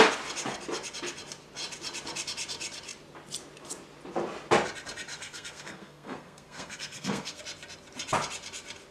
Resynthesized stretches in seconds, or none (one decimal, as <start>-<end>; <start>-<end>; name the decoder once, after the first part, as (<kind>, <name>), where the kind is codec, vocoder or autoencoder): 5.1-7.4 (codec, SNAC)